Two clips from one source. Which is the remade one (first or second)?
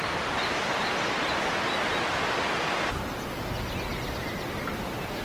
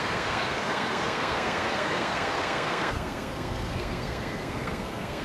second